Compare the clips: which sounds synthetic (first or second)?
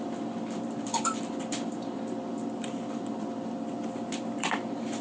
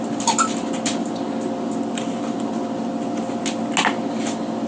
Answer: first